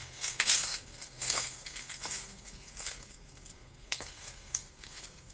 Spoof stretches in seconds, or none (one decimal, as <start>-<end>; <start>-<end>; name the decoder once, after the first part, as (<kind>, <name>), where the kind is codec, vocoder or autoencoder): 0.0-5.3 (codec, SNAC)